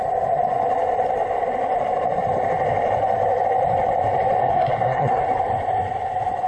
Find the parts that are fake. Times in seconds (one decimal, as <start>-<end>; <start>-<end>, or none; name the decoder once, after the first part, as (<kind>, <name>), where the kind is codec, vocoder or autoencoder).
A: 4.4-5.2 (codec, SNAC)